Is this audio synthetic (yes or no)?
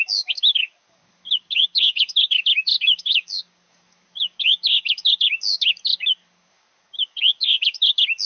yes